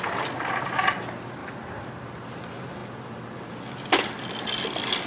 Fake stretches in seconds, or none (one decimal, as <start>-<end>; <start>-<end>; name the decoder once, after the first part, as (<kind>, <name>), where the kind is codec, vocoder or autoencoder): none